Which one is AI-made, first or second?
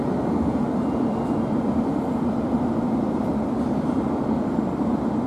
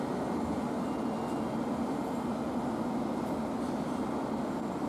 first